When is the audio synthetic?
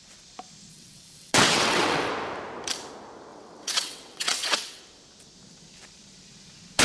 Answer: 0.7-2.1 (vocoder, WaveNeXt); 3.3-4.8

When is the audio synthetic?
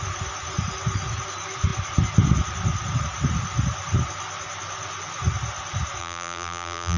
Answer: 6.0-7.0 (vocoder, BigVGAN v2)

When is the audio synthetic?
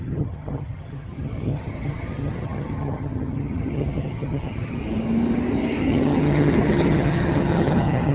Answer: 0.0-4.8 (vocoder, HiFi-GAN); 5.8-8.1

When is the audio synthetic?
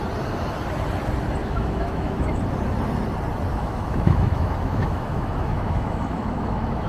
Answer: 1.4-2.4 (autoencoder, DAC-VAE); 3.5-6.9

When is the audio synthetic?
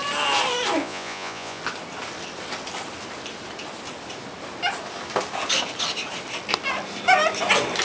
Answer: 0.8-1.6 (vocoder, Vocos)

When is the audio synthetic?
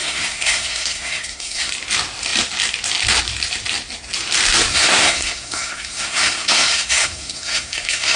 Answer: 0.0-1.7 (codec, SNAC); 4.7-8.2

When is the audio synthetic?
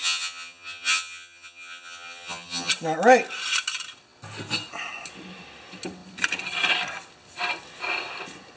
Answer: 0.0-2.7 (vocoder, HiFi-GAN)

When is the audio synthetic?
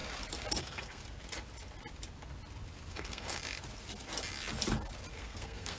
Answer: 0.6-1.0 (codec, SNAC); 2.9-3.4; 5.1-5.8